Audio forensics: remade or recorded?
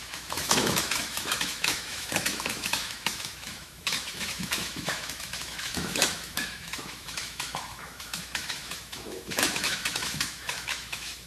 remade